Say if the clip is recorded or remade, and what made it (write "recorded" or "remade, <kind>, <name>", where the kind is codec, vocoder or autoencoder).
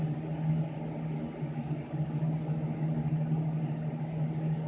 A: recorded